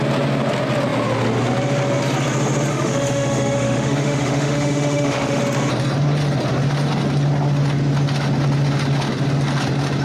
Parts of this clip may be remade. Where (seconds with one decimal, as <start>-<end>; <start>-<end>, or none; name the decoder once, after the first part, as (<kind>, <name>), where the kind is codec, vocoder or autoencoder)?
2.7-5.4 (autoencoder, DAC-VAE)